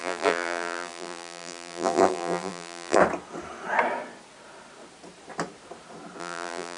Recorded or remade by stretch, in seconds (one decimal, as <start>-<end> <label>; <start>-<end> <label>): 0.0-3.0 remade; 3.0-6.2 recorded; 6.2-6.8 remade